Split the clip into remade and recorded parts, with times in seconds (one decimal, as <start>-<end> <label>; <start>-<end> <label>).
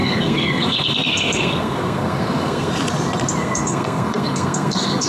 0.0-2.7 remade; 2.7-3.4 recorded; 3.4-5.1 remade